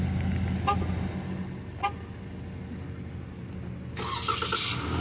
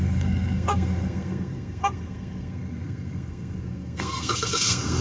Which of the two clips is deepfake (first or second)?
second